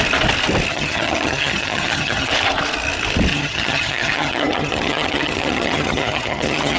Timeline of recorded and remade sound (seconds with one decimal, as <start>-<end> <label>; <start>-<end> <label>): 0.0-0.7 recorded; 0.7-2.3 remade; 2.3-3.3 recorded; 3.3-6.8 remade